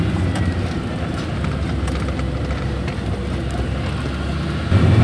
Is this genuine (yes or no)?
yes